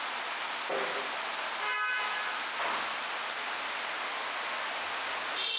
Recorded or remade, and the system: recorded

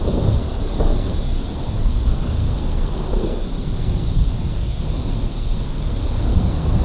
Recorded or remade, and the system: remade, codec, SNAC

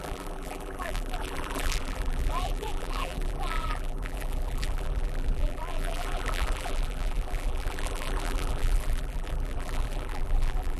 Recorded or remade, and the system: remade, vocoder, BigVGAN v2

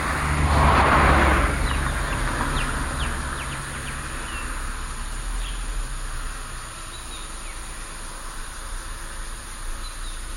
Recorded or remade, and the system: recorded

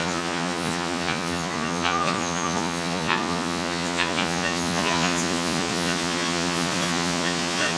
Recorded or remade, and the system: remade, vocoder, Vocos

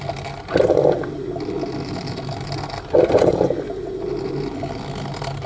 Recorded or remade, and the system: recorded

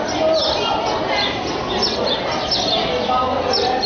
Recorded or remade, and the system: recorded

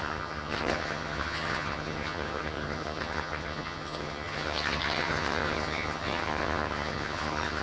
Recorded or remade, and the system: remade, vocoder, HiFi-GAN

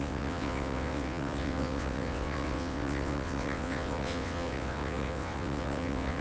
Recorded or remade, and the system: remade, vocoder, WaveNeXt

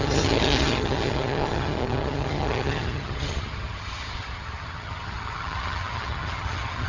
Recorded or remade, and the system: remade, vocoder, HiFi-GAN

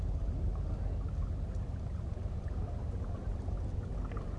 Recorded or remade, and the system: recorded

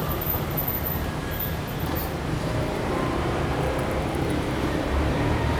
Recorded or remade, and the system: remade, vocoder, BigVGAN v2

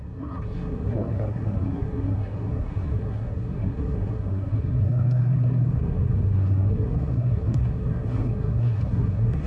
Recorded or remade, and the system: remade, codec, SNAC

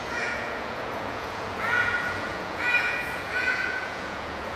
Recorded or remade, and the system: remade, vocoder, Vocos